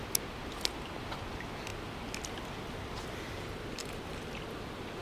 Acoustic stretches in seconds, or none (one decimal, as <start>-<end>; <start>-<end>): 0.0-5.0